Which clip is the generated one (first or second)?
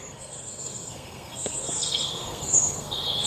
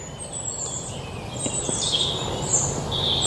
first